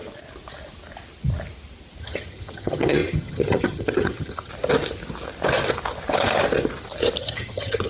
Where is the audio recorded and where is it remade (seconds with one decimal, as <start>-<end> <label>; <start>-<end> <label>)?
0.0-2.0 recorded; 2.0-4.5 remade; 4.5-7.2 recorded; 7.2-7.9 remade